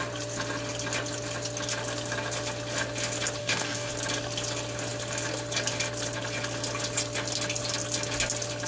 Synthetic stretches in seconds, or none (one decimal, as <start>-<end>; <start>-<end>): 3.4-3.9